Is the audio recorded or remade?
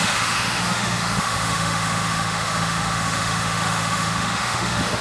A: remade